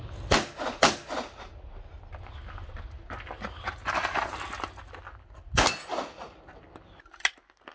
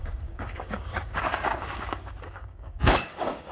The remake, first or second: second